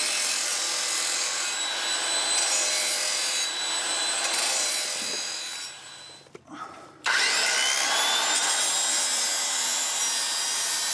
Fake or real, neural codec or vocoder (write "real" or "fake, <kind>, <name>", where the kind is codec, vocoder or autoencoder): fake, vocoder, BigVGAN v2